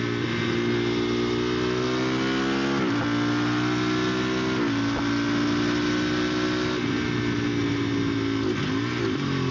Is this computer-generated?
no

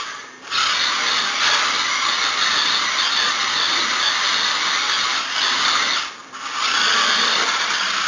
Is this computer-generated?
no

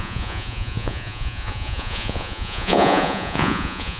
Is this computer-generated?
yes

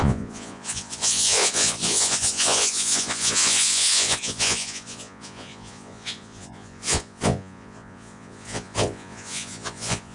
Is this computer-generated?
yes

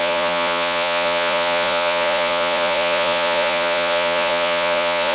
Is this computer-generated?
yes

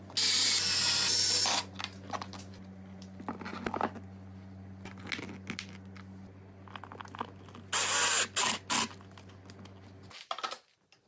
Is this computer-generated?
no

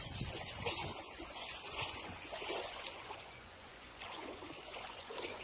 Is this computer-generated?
yes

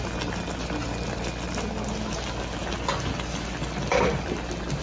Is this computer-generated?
no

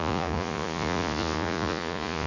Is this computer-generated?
yes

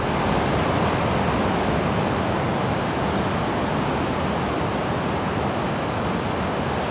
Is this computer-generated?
no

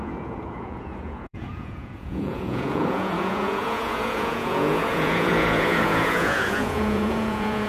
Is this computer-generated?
yes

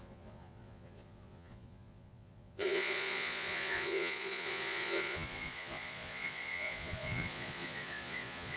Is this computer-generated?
yes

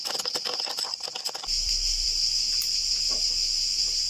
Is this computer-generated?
no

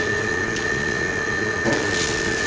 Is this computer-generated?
yes